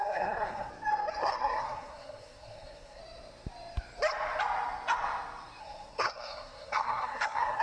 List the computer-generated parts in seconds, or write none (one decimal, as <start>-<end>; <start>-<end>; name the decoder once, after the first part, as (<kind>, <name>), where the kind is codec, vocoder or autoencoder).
0.0-0.7 (codec, SNAC); 1.2-3.0; 5.6-7.6